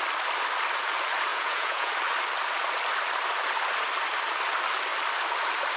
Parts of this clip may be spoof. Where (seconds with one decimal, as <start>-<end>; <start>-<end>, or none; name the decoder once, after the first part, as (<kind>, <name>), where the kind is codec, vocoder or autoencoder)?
1.3-1.9 (vocoder, Vocos)